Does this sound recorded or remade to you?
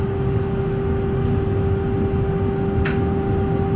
recorded